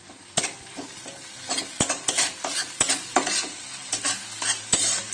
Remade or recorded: recorded